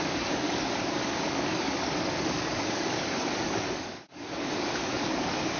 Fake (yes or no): yes